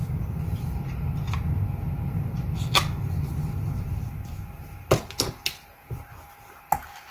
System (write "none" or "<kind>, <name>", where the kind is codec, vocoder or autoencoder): none